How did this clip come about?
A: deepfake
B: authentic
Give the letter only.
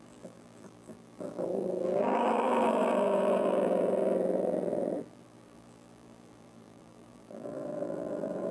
A